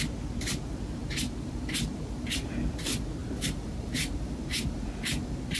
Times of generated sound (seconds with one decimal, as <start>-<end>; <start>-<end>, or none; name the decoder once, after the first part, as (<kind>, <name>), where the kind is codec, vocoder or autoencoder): 1.0-2.5 (vocoder, BigVGAN v2); 3.2-5.6